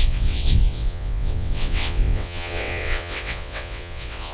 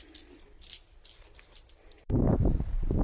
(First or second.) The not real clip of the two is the first